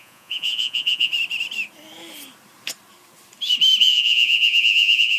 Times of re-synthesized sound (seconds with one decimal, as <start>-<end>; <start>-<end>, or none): 0.0-1.1; 3.8-5.2